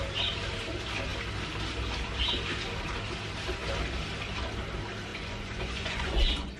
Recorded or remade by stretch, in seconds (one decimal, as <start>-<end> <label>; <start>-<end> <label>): 0.0-5.1 recorded; 5.1-6.6 remade